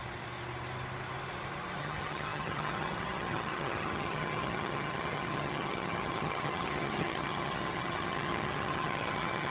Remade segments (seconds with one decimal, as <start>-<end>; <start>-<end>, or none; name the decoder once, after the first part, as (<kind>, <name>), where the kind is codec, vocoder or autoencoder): 1.8-9.5 (vocoder, HiFi-GAN)